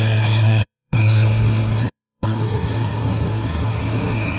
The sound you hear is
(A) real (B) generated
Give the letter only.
B